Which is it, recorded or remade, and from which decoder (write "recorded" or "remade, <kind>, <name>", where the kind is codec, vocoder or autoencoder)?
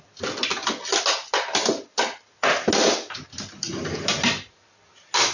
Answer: recorded